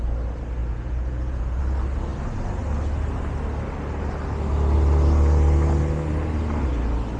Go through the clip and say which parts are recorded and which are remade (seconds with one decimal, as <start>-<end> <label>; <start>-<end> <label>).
0.0-0.6 recorded; 0.6-1.6 remade; 1.6-7.2 recorded